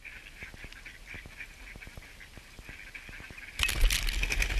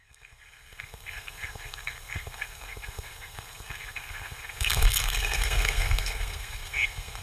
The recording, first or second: first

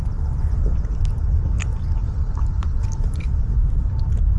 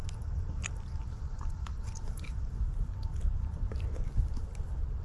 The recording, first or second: first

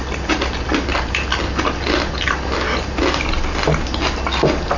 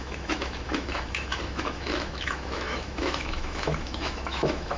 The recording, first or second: first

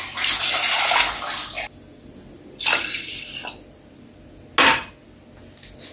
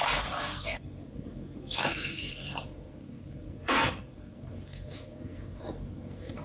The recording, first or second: first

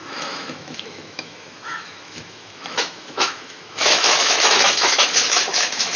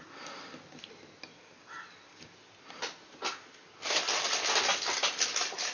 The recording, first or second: second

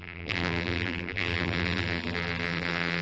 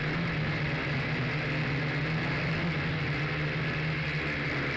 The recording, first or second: second